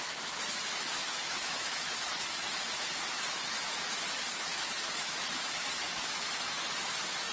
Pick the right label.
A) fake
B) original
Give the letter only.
A